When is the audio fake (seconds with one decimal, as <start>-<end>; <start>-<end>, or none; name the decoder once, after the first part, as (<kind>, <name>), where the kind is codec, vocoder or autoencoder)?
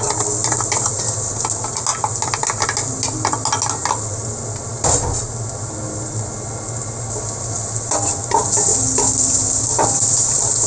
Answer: none